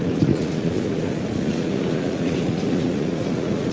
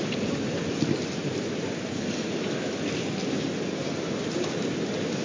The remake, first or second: first